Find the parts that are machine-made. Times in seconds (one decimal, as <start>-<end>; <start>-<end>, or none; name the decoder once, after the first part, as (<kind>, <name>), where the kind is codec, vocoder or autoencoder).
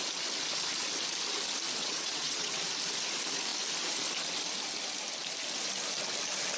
1.8-2.6 (vocoder, WaveNeXt)